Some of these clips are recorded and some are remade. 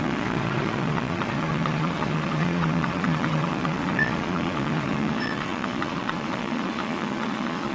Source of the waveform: remade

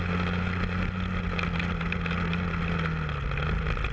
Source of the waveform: recorded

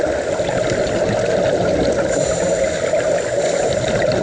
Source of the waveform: recorded